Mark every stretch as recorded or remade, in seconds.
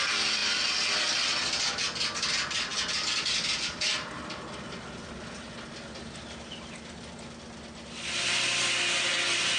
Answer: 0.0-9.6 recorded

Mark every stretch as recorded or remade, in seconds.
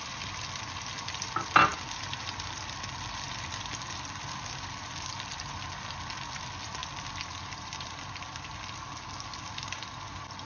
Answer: 0.0-10.5 recorded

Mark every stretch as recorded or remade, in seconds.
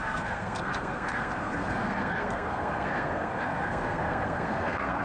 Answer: 0.0-5.0 remade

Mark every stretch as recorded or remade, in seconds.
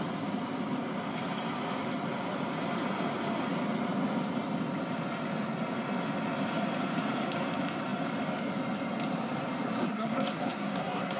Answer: 0.0-9.9 recorded; 9.9-11.2 remade